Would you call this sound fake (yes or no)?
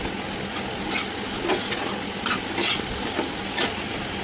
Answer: no